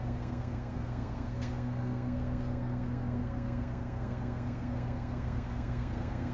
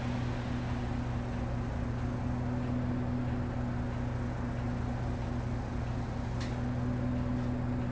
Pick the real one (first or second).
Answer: second